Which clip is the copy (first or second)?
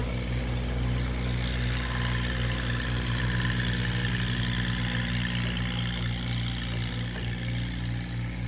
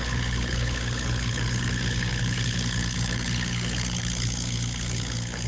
second